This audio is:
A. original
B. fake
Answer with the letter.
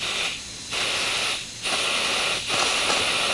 A